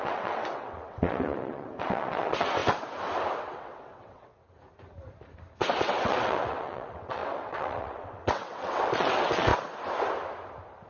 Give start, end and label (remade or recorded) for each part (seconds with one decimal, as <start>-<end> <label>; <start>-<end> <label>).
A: 0.0-2.6 remade; 2.6-3.4 recorded; 3.4-4.4 remade; 4.4-5.8 recorded; 5.8-9.5 remade; 9.5-10.9 recorded